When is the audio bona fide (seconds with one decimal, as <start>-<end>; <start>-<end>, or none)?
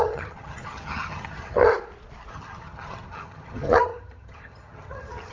1.7-2.3